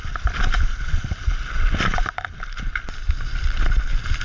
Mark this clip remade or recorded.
recorded